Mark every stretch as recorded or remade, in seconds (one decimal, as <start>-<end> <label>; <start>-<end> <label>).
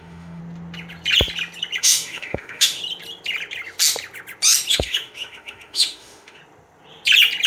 0.0-0.4 remade; 0.4-1.8 recorded; 1.8-2.8 remade; 2.8-4.7 recorded; 4.7-6.4 remade; 6.4-7.5 recorded